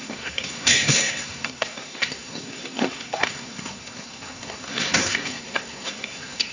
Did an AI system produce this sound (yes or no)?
yes